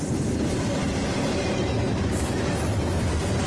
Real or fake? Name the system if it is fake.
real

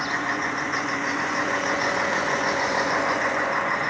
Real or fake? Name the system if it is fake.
fake, vocoder, Vocos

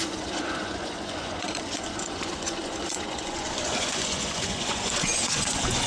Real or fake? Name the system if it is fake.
fake, vocoder, Vocos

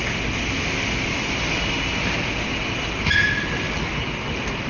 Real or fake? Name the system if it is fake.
real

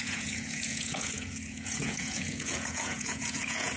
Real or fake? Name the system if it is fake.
fake, vocoder, Vocos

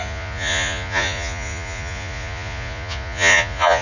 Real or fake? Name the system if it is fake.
fake, vocoder, Vocos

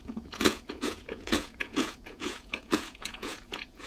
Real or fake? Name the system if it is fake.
fake, vocoder, Vocos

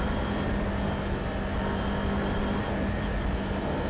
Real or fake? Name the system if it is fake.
real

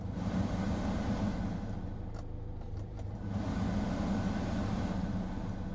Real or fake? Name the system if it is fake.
real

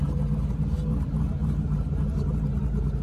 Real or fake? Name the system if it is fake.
real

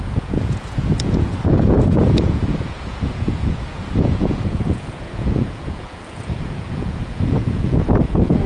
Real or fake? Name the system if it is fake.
fake, vocoder, Vocos